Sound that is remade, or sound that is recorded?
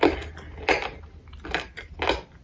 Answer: recorded